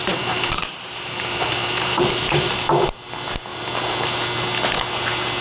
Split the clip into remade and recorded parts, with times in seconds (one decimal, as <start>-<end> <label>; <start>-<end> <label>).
0.0-2.5 remade; 2.5-5.4 recorded